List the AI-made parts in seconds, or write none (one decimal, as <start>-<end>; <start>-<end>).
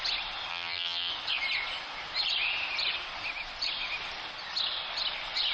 0.5-1.1